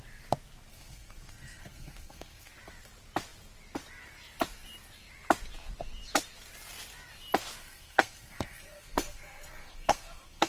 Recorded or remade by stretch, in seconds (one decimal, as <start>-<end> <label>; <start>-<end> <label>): 0.0-0.7 recorded; 0.7-2.5 remade; 2.5-7.6 recorded; 7.6-10.5 remade